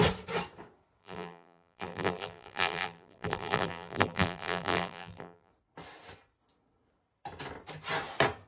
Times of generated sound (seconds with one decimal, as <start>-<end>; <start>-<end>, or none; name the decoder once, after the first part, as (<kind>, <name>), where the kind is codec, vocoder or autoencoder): 1.0-5.5 (vocoder, BigVGAN v2)

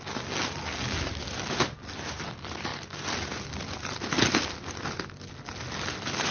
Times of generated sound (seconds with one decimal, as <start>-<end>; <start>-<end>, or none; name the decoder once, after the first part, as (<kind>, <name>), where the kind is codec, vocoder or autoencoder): none

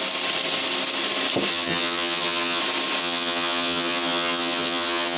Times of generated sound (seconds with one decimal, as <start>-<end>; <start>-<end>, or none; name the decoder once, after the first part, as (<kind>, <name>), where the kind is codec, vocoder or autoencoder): 1.5-2.6 (vocoder, HiFi-GAN); 3.0-5.2

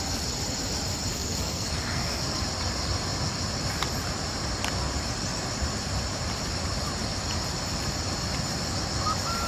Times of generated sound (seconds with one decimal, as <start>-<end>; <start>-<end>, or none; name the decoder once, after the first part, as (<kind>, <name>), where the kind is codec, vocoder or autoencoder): 1.1-2.4 (codec, SNAC)

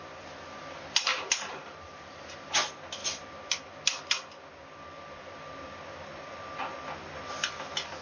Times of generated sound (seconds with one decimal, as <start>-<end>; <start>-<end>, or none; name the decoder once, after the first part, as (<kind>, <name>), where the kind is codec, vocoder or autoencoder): 1.1-2.2 (vocoder, BigVGAN v2)

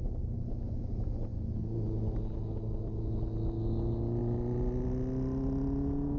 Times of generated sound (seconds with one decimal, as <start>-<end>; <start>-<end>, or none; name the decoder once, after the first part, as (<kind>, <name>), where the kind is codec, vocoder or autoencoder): none

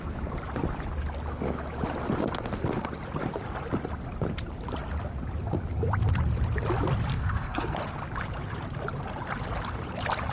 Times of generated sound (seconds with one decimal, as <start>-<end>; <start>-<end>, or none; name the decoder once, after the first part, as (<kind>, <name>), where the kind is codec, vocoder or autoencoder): 7.1-7.8 (codec, SNAC)

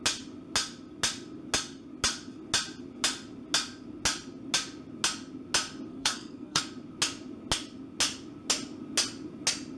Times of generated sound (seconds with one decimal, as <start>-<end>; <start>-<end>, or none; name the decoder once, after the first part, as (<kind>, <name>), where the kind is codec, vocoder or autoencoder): 5.9-6.6 (codec, SNAC)